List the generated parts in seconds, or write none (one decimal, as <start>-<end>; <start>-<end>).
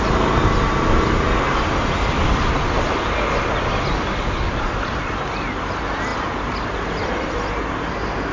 none